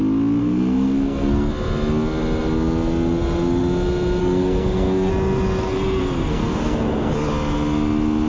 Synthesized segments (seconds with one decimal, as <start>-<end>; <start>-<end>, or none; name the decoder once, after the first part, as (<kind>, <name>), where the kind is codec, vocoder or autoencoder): 0.4-1.5 (codec, SNAC); 4.2-5.1; 6.0-7.1

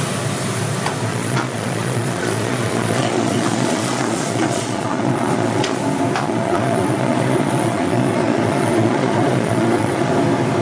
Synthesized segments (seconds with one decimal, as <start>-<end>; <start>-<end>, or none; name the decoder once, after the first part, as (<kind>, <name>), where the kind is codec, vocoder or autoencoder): 1.1-5.8 (vocoder, Vocos); 6.2-10.1

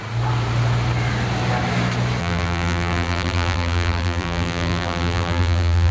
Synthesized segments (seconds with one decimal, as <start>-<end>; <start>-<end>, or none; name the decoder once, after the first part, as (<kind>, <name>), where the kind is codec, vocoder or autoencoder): 2.2-5.9 (vocoder, BigVGAN v2)